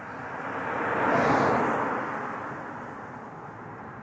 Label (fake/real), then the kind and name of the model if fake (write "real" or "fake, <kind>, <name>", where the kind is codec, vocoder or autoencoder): real